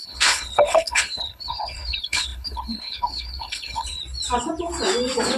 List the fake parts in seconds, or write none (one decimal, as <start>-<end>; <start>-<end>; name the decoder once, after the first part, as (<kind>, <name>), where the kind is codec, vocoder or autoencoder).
0.0-4.0 (codec, HILCodec)